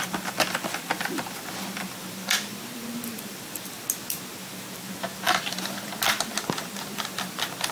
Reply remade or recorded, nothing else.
remade